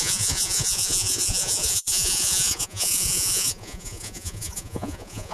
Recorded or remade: remade